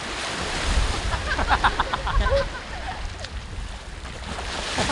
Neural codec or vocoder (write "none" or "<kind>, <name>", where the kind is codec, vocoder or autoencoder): none